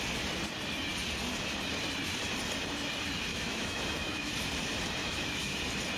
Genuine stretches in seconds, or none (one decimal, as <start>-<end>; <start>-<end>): 0.0-3.3; 4.3-5.0; 5.6-6.0